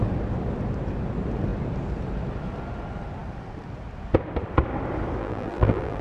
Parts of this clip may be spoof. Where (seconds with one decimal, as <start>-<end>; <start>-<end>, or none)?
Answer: 5.2-6.0